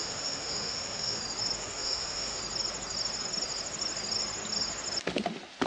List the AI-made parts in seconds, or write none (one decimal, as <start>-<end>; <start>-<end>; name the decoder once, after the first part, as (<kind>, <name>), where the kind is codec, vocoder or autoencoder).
0.0-1.2 (autoencoder, DAC-VAE); 1.6-2.4